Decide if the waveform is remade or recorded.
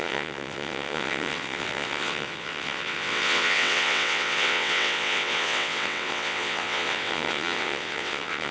remade